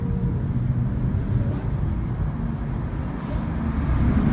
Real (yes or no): yes